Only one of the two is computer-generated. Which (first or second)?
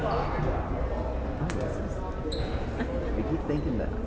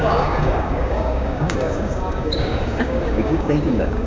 second